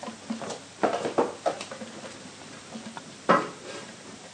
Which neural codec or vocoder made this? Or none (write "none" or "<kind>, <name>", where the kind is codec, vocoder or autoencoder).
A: none